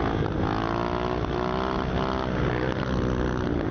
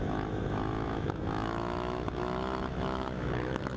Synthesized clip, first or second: second